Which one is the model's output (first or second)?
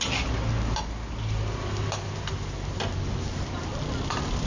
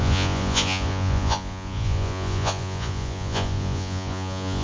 second